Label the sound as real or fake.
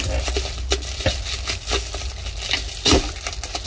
real